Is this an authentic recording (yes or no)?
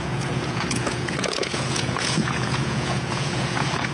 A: no